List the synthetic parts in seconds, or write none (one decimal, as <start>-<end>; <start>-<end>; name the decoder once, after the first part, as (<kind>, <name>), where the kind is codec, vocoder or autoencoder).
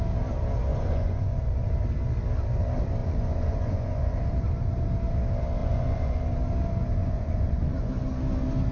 0.7-1.4 (vocoder, Vocos); 3.0-4.2; 5.6-6.2; 7.0-7.9